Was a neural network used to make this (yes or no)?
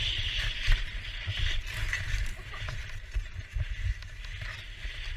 no